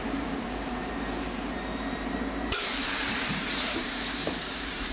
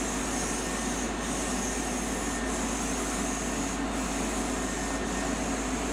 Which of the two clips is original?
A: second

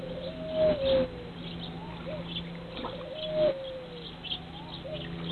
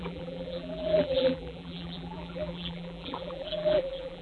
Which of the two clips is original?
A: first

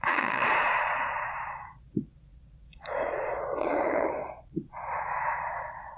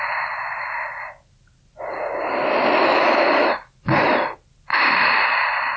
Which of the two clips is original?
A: second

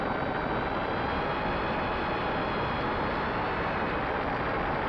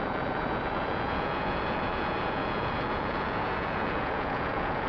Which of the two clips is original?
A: first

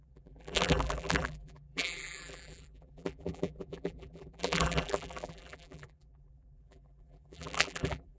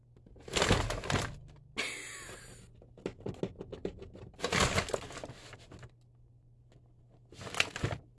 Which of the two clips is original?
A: second